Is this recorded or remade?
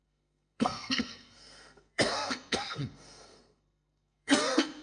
remade